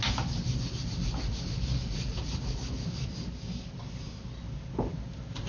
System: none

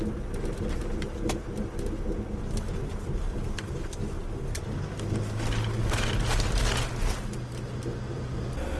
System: none